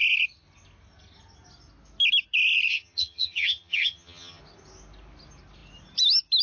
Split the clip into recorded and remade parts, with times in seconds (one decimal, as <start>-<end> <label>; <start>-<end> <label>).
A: 0.0-2.7 recorded; 2.7-4.4 remade; 4.4-6.4 recorded